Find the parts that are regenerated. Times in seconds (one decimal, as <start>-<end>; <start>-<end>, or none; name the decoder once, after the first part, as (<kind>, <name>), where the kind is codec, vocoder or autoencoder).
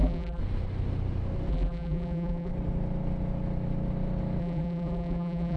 0.0-0.4 (vocoder, BigVGAN v2); 1.5-2.5; 4.4-5.6